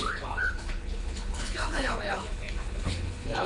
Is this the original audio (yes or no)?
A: no